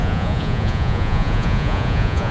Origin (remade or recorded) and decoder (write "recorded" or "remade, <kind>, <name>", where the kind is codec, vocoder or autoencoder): remade, vocoder, Vocos